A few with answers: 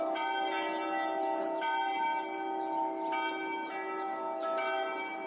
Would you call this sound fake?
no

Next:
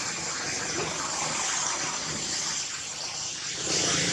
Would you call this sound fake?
no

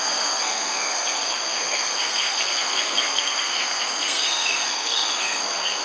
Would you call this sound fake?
yes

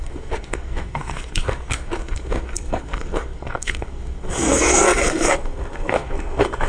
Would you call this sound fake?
yes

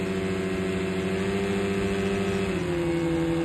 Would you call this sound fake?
no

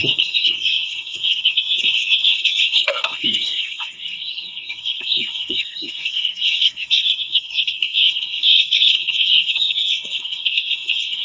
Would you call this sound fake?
yes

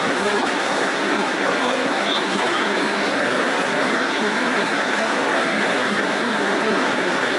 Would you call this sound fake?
yes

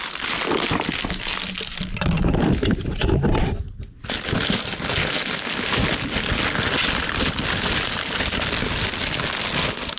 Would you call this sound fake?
no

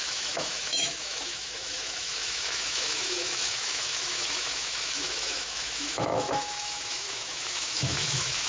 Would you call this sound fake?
yes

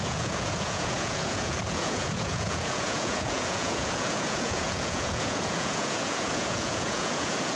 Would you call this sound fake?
yes